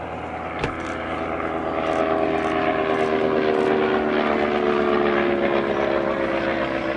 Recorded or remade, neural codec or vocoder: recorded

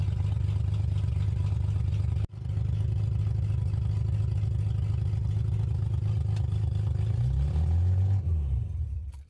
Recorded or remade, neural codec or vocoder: recorded